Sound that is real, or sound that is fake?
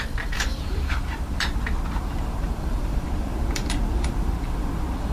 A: fake